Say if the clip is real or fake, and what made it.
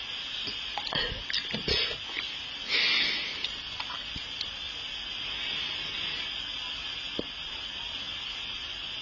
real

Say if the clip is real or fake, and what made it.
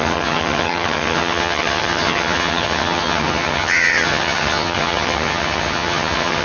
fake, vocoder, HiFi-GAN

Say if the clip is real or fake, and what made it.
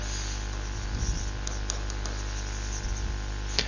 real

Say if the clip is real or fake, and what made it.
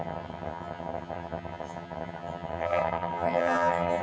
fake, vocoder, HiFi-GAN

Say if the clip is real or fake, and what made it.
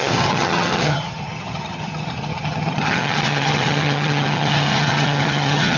fake, vocoder, HiFi-GAN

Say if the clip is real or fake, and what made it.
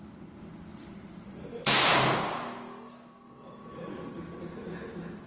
real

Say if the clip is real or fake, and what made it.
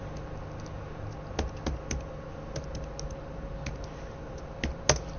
real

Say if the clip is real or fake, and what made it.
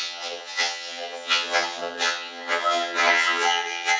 fake, vocoder, HiFi-GAN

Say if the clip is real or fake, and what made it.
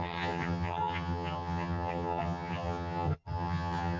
fake, vocoder, HiFi-GAN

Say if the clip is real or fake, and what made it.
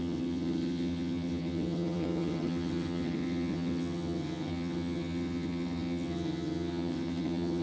fake, vocoder, HiFi-GAN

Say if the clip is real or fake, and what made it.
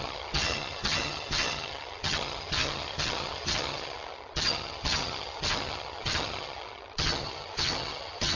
fake, vocoder, HiFi-GAN